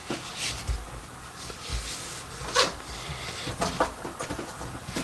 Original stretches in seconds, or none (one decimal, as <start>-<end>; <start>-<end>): 0.0-5.0